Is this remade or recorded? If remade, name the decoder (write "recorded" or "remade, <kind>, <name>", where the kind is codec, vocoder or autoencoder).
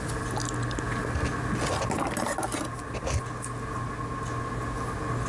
recorded